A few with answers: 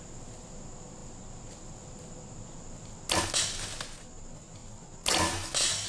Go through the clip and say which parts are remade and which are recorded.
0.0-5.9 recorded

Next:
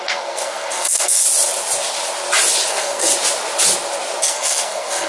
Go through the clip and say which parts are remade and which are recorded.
0.0-1.2 remade; 1.2-2.7 recorded; 2.7-3.1 remade; 3.1-4.2 recorded; 4.2-5.1 remade

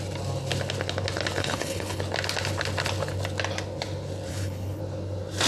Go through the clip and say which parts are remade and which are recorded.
0.0-1.4 recorded; 1.4-2.0 remade; 2.0-4.3 recorded; 4.3-4.8 remade; 4.8-5.5 recorded

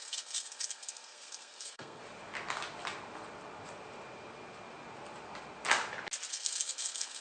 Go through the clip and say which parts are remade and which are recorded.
0.0-2.0 remade; 2.0-6.3 recorded; 6.3-7.2 remade

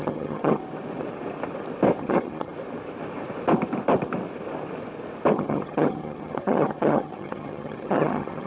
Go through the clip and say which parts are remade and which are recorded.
0.0-0.6 remade; 0.6-2.0 recorded; 2.0-2.5 remade; 2.5-5.3 recorded; 5.3-8.5 remade